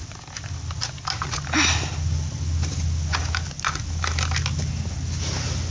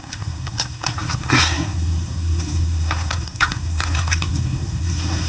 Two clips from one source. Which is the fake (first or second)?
second